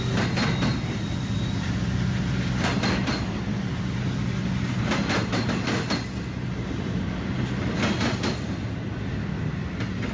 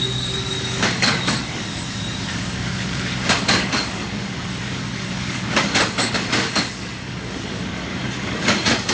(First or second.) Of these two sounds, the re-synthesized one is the second